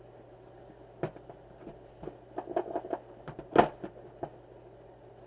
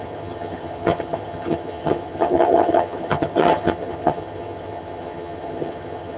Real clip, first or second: first